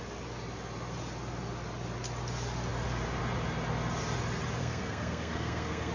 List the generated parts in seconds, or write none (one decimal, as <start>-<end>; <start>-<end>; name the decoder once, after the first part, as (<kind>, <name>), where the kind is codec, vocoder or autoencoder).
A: 4.6-5.9 (codec, SNAC)

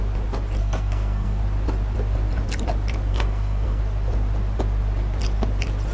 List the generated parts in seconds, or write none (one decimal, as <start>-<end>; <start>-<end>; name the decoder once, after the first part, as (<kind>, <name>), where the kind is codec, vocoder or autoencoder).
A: 0.6-1.4 (codec, SNAC); 3.1-3.8

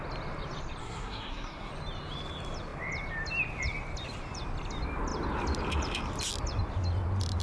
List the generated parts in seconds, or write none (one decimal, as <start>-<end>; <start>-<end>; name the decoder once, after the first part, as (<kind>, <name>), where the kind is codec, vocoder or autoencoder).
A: 0.8-1.7 (codec, SNAC)

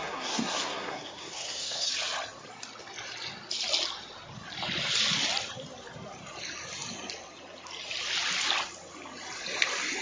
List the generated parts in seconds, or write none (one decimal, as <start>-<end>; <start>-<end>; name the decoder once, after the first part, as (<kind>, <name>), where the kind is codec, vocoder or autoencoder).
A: 0.0-1.9 (codec, SNAC)

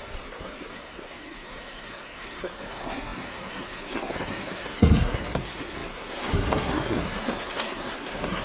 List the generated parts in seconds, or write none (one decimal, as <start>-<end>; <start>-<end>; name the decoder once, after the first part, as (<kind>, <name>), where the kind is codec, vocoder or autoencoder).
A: 0.0-8.4 (codec, SNAC)

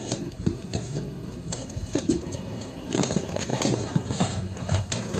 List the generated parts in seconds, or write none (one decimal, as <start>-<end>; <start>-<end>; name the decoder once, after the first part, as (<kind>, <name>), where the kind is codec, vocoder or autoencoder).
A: 0.0-5.2 (codec, SNAC)

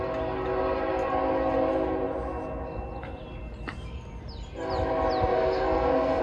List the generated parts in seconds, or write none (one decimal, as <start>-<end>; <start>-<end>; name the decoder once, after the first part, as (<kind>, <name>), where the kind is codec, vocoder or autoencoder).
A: 5.3-6.2 (codec, SNAC)